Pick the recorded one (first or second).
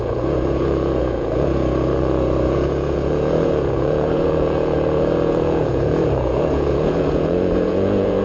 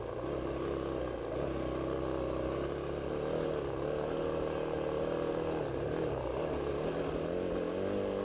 second